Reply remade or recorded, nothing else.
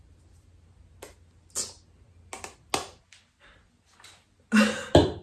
recorded